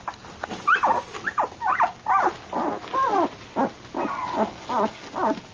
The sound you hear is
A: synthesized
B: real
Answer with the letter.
B